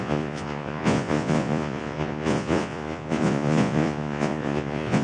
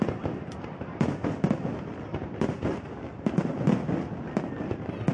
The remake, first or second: first